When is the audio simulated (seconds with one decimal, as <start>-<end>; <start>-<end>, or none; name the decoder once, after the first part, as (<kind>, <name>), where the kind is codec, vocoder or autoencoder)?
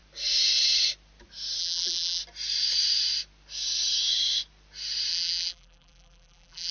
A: 1.6-2.2 (vocoder, BigVGAN v2); 5.1-6.7